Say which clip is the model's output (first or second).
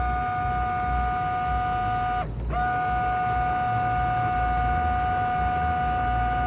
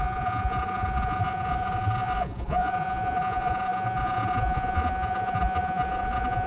second